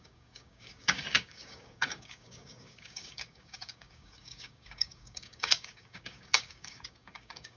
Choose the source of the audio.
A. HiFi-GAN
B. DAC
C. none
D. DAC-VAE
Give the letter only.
B